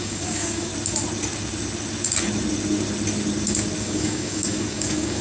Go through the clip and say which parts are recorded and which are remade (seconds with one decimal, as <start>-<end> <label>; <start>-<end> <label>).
0.0-0.7 remade; 0.7-3.8 recorded; 3.8-5.2 remade